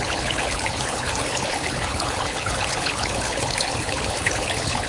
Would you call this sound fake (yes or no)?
yes